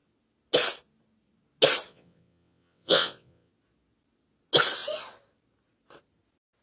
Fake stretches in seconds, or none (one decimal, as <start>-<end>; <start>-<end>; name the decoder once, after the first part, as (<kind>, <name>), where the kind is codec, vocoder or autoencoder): 1.9-3.5 (vocoder, WaveNeXt)

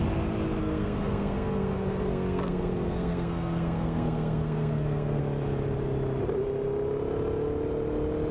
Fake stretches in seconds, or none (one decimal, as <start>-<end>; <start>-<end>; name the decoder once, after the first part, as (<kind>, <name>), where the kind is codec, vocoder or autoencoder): 0.6-5.2 (codec, SNAC)

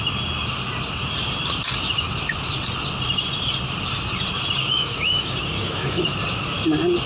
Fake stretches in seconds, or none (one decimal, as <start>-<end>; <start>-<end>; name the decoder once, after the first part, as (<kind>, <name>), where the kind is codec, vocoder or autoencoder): 4.6-6.0 (codec, DAC)

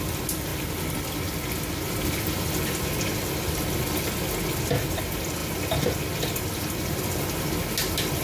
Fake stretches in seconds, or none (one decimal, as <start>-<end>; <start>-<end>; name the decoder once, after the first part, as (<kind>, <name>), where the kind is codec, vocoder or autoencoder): none

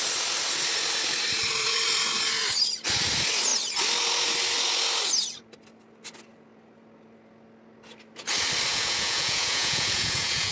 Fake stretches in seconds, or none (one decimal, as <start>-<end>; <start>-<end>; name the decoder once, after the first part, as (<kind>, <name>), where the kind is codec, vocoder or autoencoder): 8.7-10.5 (vocoder, Vocos)

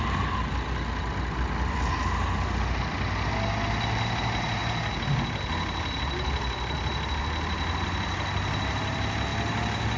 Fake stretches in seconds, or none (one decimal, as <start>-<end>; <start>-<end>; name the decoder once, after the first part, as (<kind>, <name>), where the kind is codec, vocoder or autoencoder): none

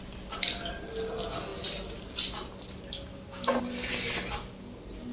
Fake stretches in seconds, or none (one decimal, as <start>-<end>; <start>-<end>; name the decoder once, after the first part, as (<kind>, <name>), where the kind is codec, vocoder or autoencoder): 3.1-3.6 (codec, DAC)